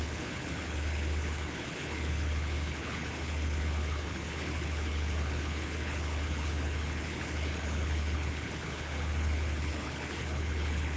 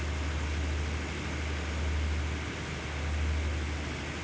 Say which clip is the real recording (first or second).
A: second